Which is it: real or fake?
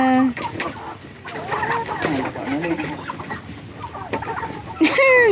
real